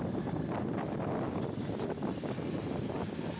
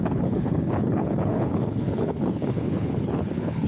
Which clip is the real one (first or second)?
first